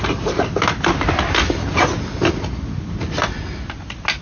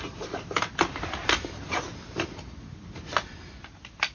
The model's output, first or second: second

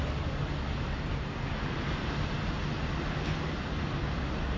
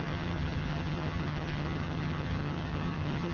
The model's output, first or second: second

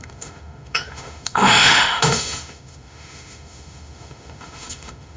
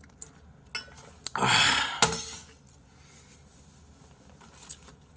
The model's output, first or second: first